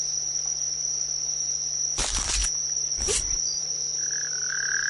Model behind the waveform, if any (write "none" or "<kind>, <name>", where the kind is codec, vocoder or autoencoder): vocoder, BigVGAN v2